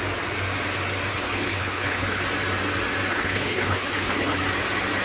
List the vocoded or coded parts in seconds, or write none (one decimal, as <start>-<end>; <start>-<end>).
1.1-2.2; 3.1-4.4